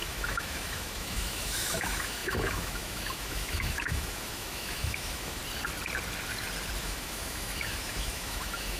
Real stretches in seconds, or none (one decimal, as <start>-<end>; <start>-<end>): 5.4-6.8